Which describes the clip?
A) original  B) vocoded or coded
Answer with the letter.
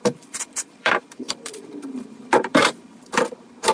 B